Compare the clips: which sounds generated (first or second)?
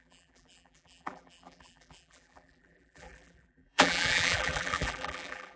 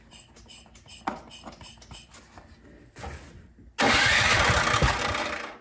first